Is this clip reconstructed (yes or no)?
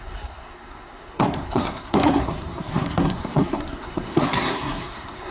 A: yes